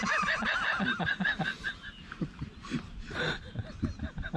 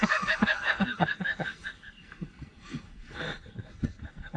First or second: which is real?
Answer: first